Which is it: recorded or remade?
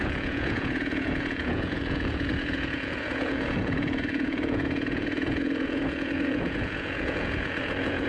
remade